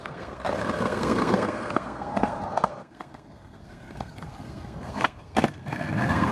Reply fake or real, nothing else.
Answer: fake